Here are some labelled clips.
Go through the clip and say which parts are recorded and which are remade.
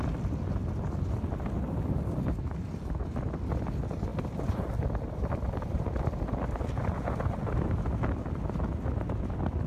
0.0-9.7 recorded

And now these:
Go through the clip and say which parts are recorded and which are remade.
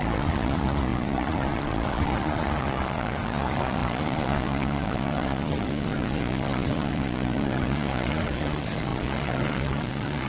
0.0-10.3 remade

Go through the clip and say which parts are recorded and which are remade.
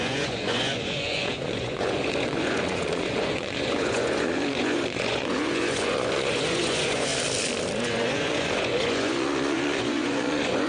0.0-7.1 remade; 7.1-7.8 recorded; 7.8-10.7 remade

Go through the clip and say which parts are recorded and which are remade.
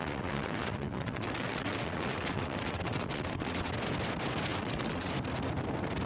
0.0-3.7 remade; 3.7-4.5 recorded; 4.5-5.1 remade; 5.1-6.1 recorded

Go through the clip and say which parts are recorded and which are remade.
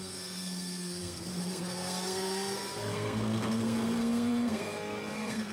0.0-5.5 remade